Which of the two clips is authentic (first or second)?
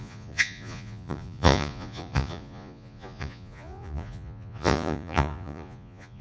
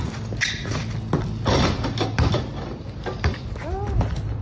second